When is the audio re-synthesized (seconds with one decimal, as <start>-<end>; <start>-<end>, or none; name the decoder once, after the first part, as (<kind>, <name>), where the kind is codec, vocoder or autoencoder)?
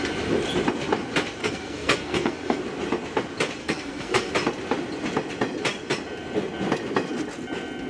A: 1.4-2.6 (codec, SNAC); 3.6-4.3